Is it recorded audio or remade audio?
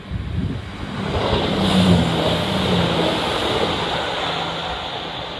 recorded